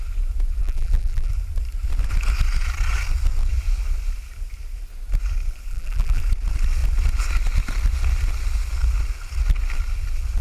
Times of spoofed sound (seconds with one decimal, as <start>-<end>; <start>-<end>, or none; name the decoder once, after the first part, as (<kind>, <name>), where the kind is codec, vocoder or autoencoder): 0.6-1.3 (vocoder, BigVGAN v2); 5.7-6.2